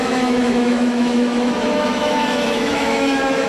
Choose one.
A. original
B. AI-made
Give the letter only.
B